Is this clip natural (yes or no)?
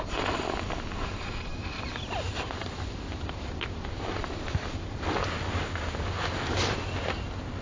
yes